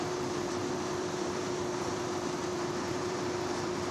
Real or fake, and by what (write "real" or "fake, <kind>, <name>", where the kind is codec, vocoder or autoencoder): fake, vocoder, BigVGAN v2